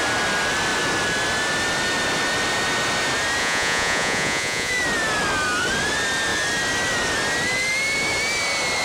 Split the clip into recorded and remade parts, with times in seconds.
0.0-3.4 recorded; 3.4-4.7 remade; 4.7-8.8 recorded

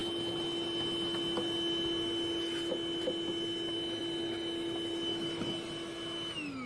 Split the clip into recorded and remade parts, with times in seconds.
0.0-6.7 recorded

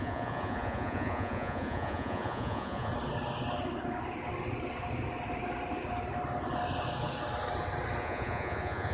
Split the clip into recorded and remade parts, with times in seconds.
0.0-2.9 remade; 2.9-8.0 recorded; 8.0-8.9 remade